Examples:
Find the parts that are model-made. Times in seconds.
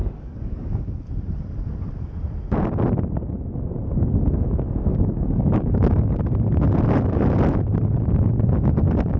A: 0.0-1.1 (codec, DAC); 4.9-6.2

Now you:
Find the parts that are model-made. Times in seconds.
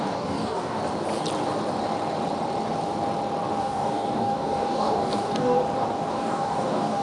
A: 0.0-0.8 (codec, DAC); 3.6-5.6; 6.1-7.0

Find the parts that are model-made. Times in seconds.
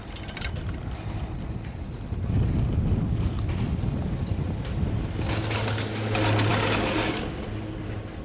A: 6.5-7.4 (codec, DAC)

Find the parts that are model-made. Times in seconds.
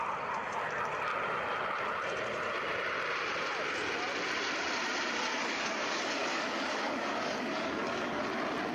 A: 5.3-8.2 (codec, DAC)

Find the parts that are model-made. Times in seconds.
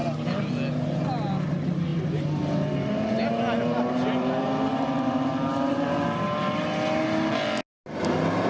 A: none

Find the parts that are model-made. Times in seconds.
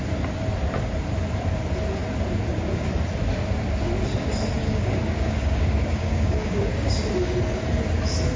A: 4.6-6.9 (codec, DAC)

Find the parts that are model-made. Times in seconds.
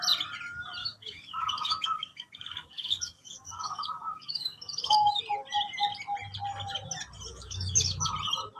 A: 0.8-5.2 (codec, DAC); 7.3-8.1